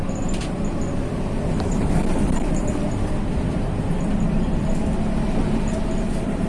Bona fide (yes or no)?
no